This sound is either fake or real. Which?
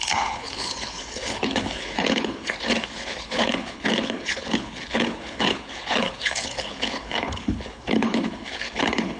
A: fake